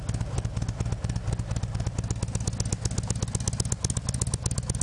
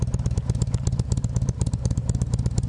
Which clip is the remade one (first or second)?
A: second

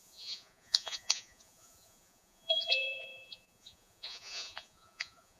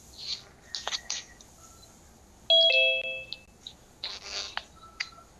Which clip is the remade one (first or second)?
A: first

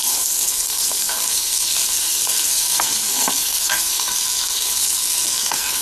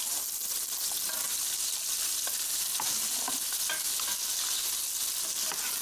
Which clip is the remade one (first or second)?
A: first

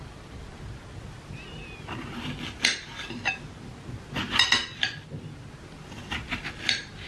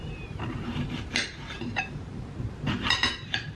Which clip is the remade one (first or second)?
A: second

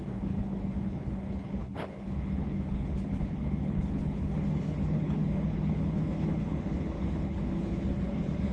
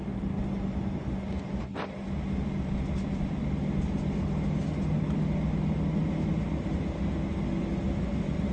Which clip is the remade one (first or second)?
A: first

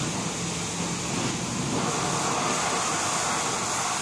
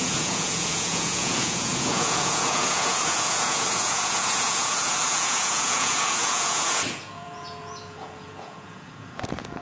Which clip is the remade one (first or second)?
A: second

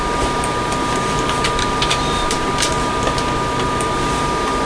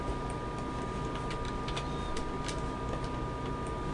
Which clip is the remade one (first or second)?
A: first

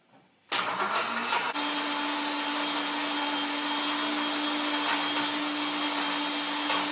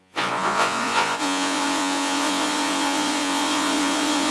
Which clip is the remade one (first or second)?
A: second